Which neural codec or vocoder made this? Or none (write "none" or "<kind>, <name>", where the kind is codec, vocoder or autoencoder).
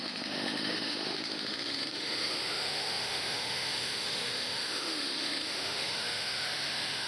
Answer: autoencoder, DAC-VAE